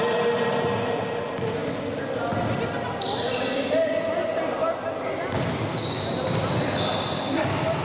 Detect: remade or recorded recorded